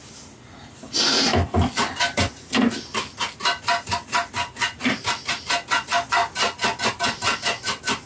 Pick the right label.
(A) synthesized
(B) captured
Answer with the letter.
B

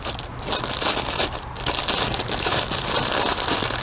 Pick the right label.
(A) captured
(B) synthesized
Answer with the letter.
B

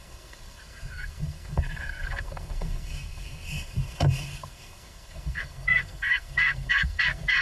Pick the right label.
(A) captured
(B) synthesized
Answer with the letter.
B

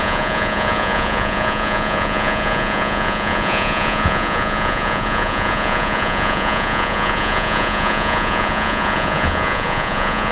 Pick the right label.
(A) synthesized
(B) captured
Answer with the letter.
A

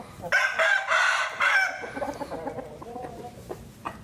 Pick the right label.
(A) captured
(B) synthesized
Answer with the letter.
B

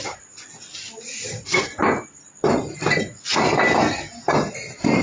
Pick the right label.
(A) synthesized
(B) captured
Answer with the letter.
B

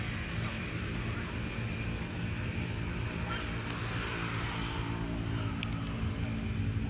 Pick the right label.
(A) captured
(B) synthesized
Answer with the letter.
A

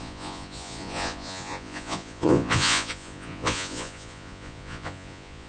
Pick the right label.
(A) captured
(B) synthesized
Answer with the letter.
B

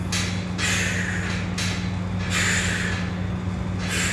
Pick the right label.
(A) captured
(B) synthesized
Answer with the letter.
A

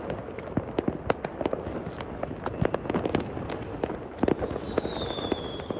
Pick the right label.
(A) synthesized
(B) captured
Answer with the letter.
B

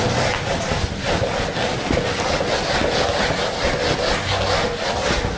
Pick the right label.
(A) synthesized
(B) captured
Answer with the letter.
B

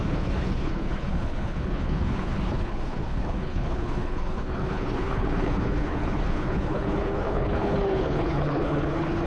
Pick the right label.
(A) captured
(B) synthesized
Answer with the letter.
B